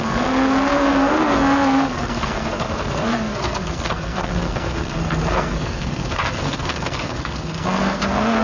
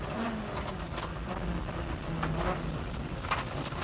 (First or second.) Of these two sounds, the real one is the second